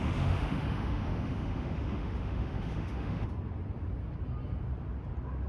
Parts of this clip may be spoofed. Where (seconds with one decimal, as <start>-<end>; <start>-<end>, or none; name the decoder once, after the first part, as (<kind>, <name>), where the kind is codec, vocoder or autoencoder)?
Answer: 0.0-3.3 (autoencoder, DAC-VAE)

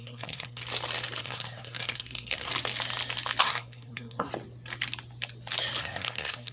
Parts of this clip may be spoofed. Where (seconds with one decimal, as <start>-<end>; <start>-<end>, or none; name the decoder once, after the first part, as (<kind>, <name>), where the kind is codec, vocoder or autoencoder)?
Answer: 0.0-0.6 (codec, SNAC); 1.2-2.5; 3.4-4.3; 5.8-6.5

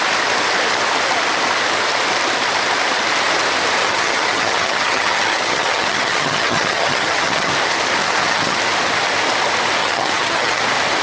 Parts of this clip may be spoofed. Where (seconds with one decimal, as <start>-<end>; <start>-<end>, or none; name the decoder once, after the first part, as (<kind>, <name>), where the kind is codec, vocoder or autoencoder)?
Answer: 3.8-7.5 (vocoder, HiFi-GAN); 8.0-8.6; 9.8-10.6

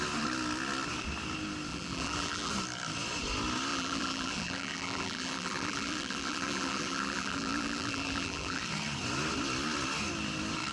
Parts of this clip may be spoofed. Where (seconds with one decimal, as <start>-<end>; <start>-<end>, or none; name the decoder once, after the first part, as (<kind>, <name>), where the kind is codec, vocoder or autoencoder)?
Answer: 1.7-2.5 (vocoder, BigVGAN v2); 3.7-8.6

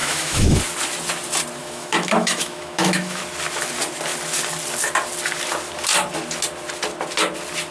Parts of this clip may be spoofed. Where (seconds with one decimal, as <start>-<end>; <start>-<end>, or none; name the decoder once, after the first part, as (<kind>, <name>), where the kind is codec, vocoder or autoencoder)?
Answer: 0.0-0.6 (autoencoder, DAC-VAE); 1.6-3.2

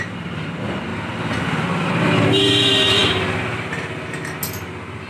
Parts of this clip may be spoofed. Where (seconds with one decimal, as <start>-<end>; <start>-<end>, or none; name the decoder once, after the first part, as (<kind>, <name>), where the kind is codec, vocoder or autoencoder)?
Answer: 0.0-0.9 (vocoder, BigVGAN v2); 1.9-3.0